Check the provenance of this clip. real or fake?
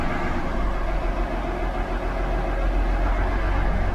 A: real